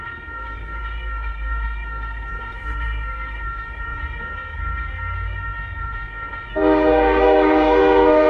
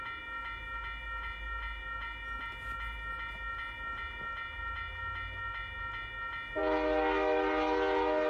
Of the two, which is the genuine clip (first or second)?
second